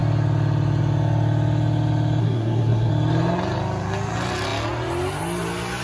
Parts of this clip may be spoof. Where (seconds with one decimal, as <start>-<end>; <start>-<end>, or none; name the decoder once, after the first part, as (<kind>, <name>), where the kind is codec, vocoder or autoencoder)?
2.2-2.9 (codec, SNAC)